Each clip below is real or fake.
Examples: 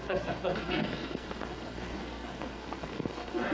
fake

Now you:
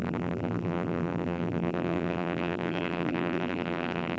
fake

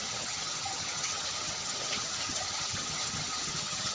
fake